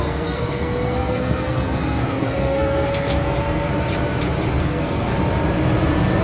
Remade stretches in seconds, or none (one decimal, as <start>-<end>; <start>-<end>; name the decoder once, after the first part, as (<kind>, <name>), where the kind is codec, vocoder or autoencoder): 0.0-3.7 (codec, SNAC); 4.6-5.1